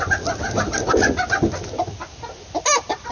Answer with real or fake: real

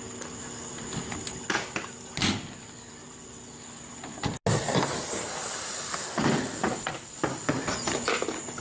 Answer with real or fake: real